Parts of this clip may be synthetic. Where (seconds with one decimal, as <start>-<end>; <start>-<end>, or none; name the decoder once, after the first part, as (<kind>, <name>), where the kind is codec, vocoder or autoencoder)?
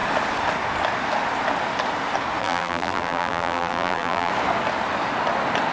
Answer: 2.4-4.3 (vocoder, BigVGAN v2)